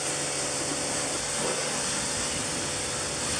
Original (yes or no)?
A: yes